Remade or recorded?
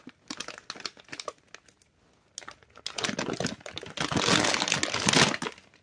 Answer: recorded